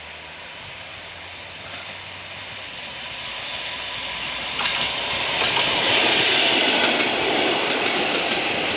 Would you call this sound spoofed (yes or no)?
yes